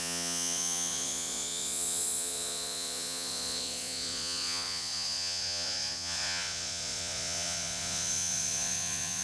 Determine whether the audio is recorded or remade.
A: remade